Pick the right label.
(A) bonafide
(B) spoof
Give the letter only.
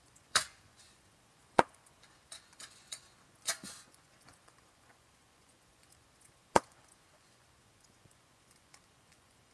B